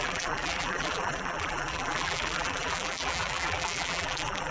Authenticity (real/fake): fake